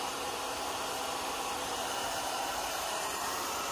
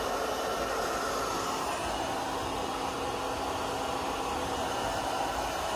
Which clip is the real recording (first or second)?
second